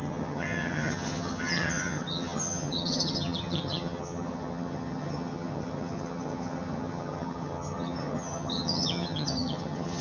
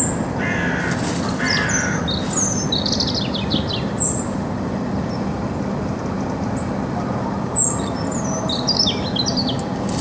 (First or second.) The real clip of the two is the second